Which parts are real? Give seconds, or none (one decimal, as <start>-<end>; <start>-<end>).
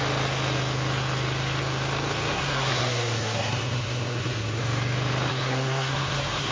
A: 0.0-2.3; 4.6-5.3